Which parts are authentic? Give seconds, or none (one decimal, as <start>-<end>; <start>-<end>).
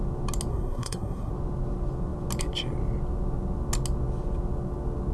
0.0-0.5; 1.3-5.1